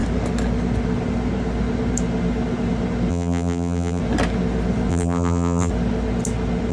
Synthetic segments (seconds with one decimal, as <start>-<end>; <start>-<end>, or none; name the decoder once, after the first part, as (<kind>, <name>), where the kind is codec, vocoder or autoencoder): 3.1-4.0 (vocoder, BigVGAN v2); 4.9-5.7

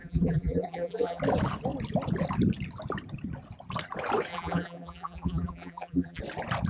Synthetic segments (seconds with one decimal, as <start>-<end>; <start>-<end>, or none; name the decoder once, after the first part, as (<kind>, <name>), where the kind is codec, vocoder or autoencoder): 0.0-1.2 (vocoder, BigVGAN v2); 4.3-6.2

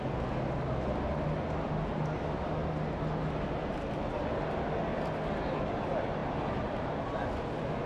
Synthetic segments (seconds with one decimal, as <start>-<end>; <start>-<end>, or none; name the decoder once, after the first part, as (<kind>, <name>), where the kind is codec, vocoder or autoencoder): 6.2-6.9 (vocoder, BigVGAN v2)